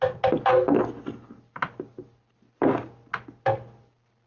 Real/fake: real